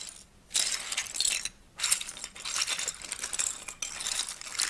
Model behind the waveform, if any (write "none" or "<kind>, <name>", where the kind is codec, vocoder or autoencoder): none